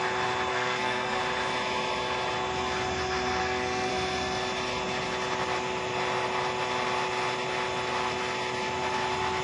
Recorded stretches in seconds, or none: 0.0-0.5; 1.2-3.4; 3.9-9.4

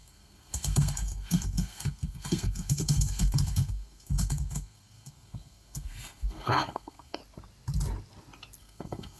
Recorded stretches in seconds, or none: 7.2-8.6

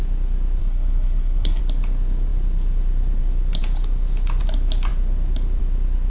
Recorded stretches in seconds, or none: 0.0-0.6; 1.6-6.1

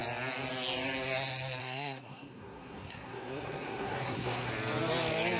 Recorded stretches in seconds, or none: 0.0-1.6; 4.5-5.4

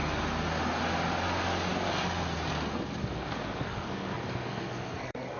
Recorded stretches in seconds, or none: 0.0-3.0